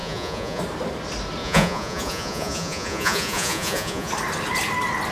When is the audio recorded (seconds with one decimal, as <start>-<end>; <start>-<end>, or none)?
0.6-1.4; 4.1-5.1